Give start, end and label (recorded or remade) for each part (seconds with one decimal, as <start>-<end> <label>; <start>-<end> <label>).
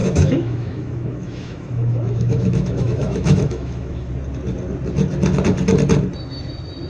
0.0-4.1 remade; 4.1-6.9 recorded